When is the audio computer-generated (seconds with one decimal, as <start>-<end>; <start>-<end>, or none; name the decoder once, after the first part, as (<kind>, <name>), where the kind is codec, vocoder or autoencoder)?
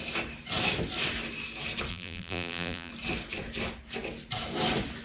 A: 1.9-2.9 (vocoder, BigVGAN v2)